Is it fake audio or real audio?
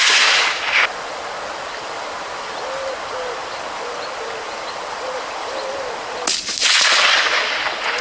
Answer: real